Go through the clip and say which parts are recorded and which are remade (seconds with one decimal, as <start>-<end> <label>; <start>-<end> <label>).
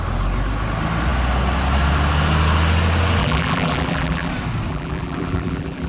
0.0-3.2 recorded; 3.2-4.3 remade; 4.3-4.7 recorded; 4.7-5.9 remade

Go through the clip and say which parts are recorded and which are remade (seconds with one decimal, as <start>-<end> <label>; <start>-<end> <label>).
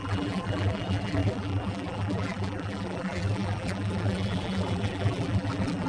0.0-5.9 remade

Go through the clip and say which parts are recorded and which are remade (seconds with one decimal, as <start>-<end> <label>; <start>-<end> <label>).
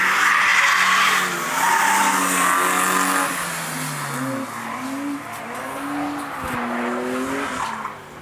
0.0-8.2 recorded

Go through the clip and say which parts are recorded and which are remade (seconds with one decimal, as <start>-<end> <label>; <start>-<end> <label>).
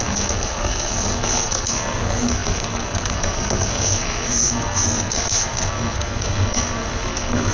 0.0-7.5 remade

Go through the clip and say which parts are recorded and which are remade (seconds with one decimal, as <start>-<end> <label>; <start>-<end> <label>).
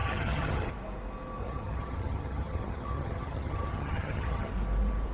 0.0-0.7 remade; 0.7-1.4 recorded; 1.4-4.5 remade; 4.5-5.1 recorded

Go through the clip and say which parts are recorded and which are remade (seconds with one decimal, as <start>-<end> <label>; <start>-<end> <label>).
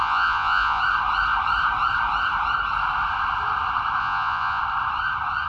0.0-0.8 remade; 0.8-4.0 recorded; 4.0-4.6 remade; 4.6-5.5 recorded